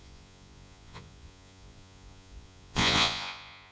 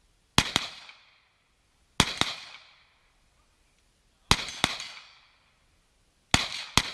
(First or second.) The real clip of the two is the second